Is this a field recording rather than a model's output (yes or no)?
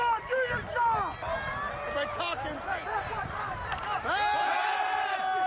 yes